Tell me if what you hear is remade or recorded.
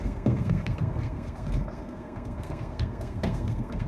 remade